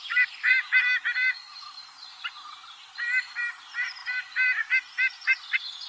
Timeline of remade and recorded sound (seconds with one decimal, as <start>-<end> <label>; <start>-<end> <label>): 0.0-5.9 recorded